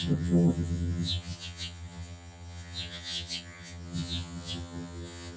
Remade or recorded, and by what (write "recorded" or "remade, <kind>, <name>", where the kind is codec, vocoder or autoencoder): remade, vocoder, HiFi-GAN